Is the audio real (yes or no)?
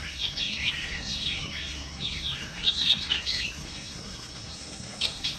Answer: no